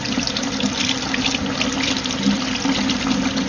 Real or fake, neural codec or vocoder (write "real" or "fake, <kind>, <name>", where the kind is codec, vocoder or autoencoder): real